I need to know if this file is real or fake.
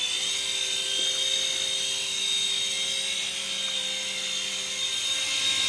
real